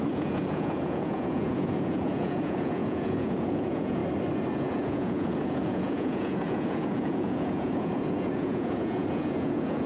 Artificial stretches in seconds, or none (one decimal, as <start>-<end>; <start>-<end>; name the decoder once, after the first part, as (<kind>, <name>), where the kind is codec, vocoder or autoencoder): 0.0-4.0 (vocoder, Vocos); 4.6-9.9